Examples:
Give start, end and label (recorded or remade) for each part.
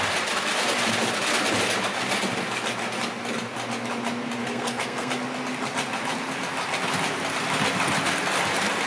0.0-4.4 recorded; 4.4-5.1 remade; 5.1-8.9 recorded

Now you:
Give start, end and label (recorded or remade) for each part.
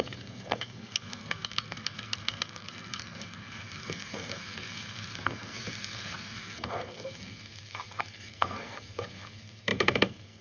0.0-10.4 remade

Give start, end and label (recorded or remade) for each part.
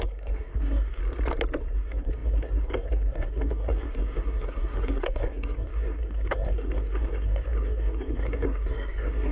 0.0-1.0 remade; 1.0-1.6 recorded; 1.6-9.3 remade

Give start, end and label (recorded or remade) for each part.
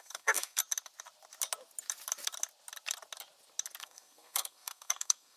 0.0-0.6 remade; 0.6-3.8 recorded; 3.8-5.4 remade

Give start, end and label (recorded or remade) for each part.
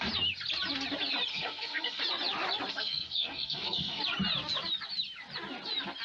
0.0-1.3 recorded; 1.3-2.0 remade; 2.0-2.7 recorded; 2.7-4.0 remade; 4.0-6.0 recorded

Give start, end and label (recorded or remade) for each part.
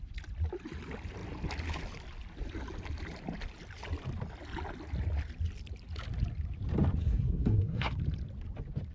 0.0-7.0 recorded; 7.0-7.9 remade; 7.9-8.9 recorded